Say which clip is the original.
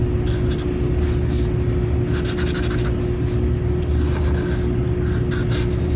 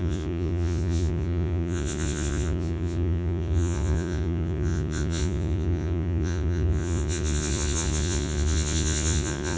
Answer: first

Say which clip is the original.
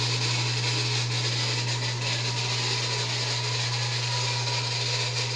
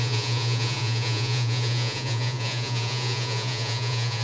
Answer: first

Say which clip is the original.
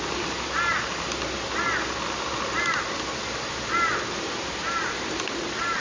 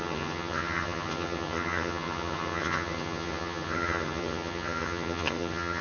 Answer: first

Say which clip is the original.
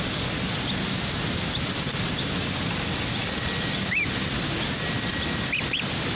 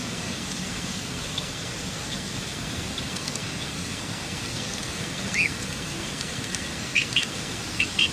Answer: first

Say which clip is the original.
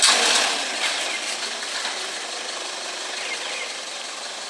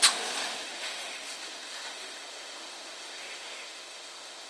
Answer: first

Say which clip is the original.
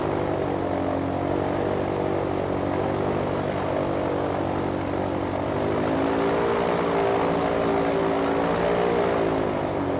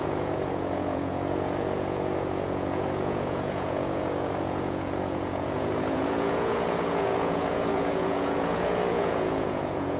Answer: first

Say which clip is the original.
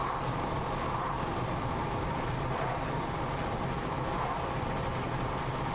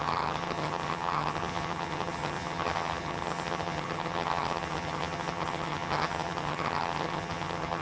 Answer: first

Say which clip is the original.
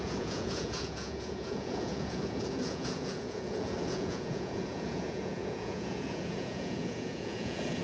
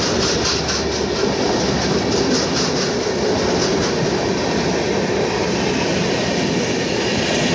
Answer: second